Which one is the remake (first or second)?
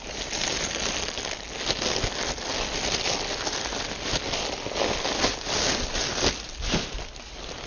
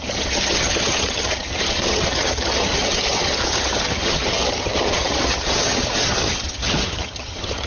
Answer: second